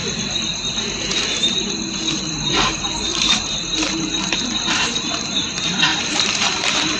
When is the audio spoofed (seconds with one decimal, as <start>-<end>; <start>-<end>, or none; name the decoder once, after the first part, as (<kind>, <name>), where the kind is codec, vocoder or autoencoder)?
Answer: 2.1-7.0 (vocoder, BigVGAN v2)